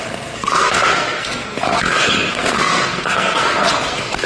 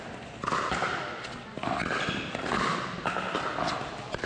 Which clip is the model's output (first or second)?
first